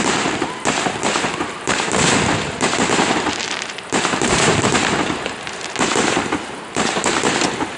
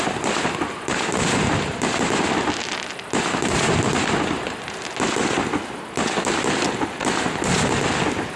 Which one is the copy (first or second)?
first